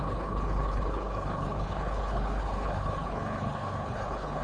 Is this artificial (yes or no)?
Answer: yes